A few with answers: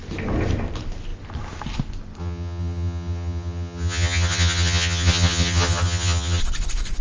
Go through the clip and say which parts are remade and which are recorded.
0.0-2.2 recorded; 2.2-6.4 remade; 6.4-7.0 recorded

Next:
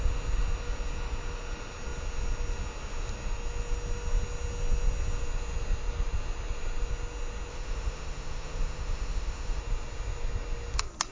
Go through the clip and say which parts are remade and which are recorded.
0.0-7.5 recorded; 7.5-9.6 remade; 9.6-11.1 recorded

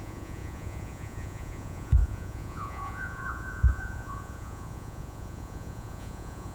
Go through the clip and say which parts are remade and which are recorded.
0.0-6.5 remade